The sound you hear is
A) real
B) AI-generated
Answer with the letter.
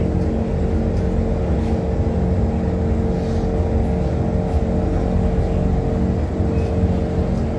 A